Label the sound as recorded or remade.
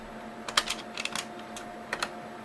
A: recorded